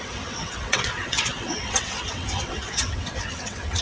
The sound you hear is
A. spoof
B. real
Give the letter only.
A